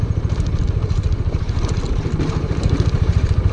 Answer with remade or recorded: remade